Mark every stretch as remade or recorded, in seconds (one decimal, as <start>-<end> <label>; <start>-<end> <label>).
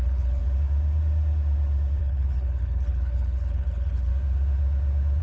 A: 0.0-0.4 remade; 0.4-2.0 recorded; 2.0-4.1 remade; 4.1-5.2 recorded